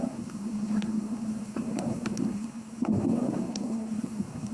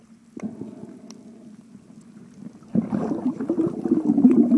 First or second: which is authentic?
second